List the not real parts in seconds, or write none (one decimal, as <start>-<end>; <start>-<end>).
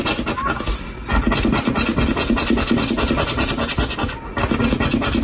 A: none